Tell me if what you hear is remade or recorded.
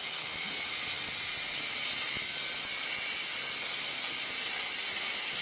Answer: recorded